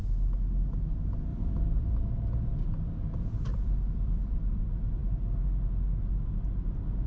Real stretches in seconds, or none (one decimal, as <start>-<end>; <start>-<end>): 0.0-1.3; 2.0-2.5; 4.6-7.1